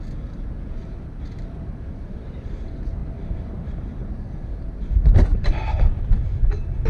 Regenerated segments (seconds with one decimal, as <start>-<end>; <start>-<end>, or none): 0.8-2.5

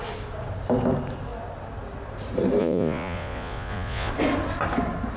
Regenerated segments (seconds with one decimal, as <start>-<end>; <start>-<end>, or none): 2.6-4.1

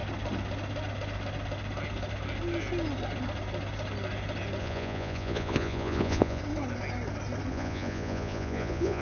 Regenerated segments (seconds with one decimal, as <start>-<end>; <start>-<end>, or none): 4.6-6.4; 7.5-9.0

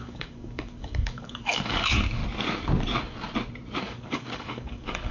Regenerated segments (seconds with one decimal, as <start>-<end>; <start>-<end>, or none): 0.0-2.2; 3.8-5.1